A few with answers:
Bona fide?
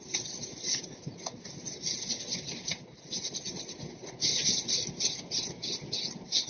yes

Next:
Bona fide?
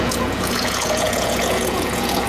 no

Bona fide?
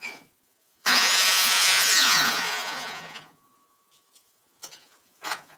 no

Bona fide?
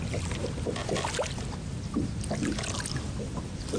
yes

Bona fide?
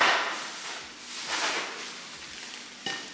yes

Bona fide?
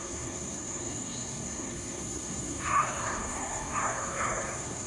no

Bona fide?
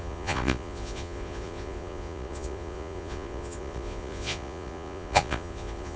no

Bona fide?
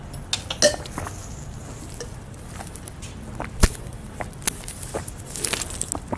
yes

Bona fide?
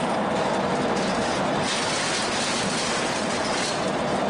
yes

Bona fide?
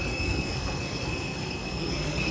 no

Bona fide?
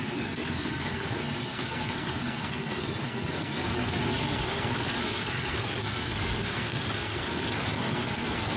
no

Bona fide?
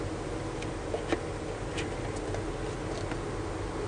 yes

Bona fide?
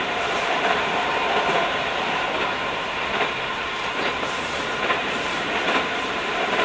no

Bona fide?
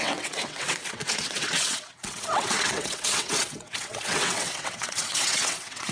no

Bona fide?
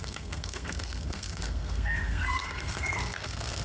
no